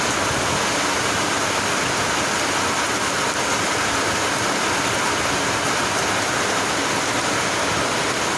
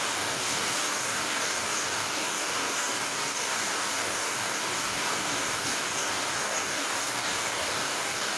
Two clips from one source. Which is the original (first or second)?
first